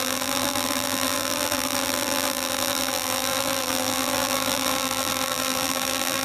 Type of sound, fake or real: fake